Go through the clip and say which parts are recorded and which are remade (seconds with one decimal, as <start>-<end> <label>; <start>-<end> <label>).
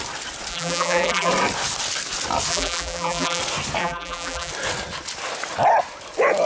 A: 0.0-0.5 recorded; 0.5-1.3 remade; 1.3-2.5 recorded; 2.5-3.4 remade; 3.4-3.8 recorded; 3.8-4.5 remade; 4.5-6.5 recorded